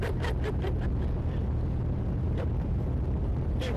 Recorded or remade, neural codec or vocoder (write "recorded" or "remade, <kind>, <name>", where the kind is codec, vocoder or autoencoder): remade, vocoder, BigVGAN v2